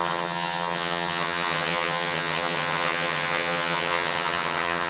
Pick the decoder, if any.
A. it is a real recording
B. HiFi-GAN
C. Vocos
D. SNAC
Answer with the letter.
B